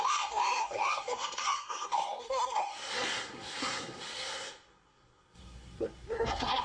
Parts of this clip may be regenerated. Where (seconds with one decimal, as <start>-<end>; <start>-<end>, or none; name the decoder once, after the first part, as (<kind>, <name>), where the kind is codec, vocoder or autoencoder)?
0.0-6.6 (codec, SNAC)